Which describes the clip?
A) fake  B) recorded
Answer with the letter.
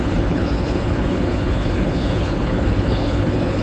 A